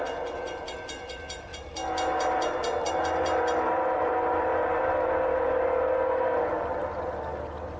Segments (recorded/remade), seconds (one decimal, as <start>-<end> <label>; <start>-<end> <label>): 0.0-1.5 remade; 1.5-2.9 recorded; 2.9-4.5 remade; 4.5-5.6 recorded; 5.6-6.8 remade; 6.8-7.8 recorded